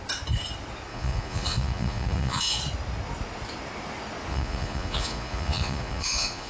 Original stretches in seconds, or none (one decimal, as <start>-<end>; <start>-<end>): 0.0-0.9; 2.6-4.3